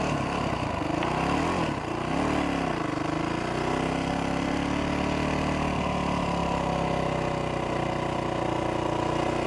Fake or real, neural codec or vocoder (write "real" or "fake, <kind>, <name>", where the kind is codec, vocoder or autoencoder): real